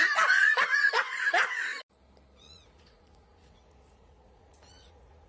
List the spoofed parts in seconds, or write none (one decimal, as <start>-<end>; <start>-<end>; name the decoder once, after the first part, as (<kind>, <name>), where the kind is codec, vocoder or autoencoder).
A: 0.0-1.7 (vocoder, Vocos); 2.4-5.3